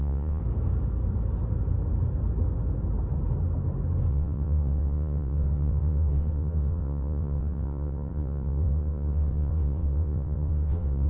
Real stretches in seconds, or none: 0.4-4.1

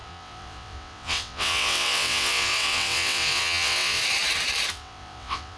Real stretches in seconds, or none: 4.0-4.7

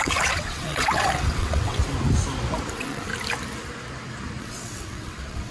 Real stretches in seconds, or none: 1.8-2.7; 3.1-4.4

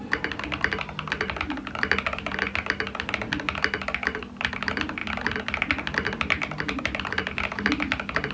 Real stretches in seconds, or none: 0.0-8.3

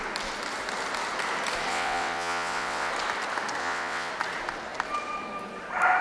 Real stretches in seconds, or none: 0.0-1.7; 2.9-3.6; 4.1-6.0

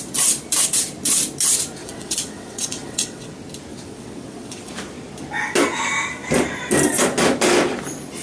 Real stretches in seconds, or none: 0.0-1.8; 3.3-3.7; 4.7-8.2

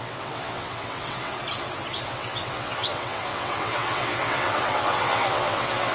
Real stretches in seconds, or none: 1.3-2.1

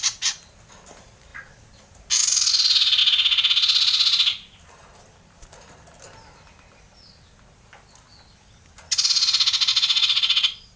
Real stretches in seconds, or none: 0.0-9.7